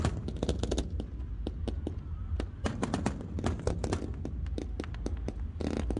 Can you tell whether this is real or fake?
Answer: real